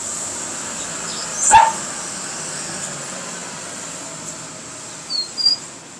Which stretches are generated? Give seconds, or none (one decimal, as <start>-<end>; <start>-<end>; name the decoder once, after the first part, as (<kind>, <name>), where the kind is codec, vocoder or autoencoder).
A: none